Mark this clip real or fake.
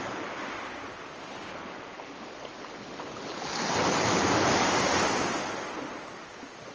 real